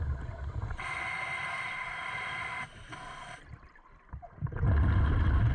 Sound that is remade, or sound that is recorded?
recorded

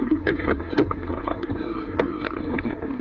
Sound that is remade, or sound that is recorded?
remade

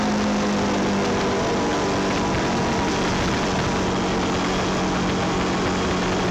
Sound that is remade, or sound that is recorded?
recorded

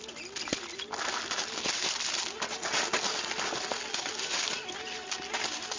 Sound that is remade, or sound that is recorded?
recorded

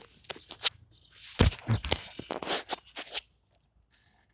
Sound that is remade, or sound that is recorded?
recorded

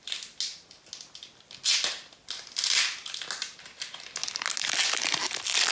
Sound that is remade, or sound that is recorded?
recorded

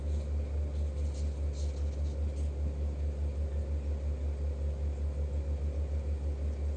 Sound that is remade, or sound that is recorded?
recorded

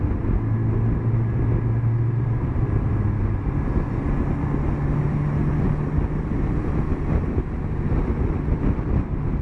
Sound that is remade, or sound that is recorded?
recorded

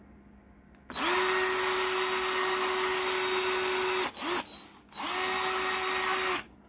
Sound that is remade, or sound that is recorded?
recorded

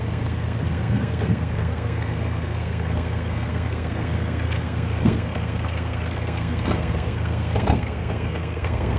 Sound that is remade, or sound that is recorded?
remade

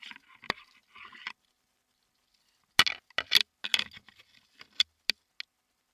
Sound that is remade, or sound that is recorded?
recorded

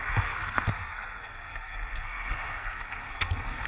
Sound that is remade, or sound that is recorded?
remade